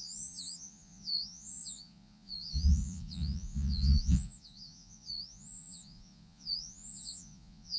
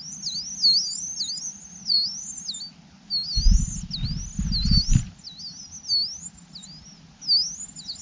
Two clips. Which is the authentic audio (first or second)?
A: second